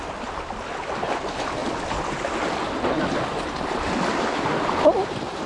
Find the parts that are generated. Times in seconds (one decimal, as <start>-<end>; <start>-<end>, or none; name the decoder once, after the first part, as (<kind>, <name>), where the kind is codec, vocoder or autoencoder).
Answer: none

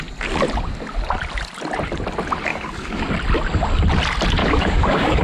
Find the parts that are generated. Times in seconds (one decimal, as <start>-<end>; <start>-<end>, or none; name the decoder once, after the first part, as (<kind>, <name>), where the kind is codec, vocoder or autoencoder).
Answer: 2.5-3.0 (codec, DAC); 4.4-5.2